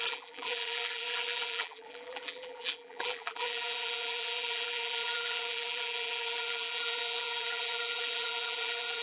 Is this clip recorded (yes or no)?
no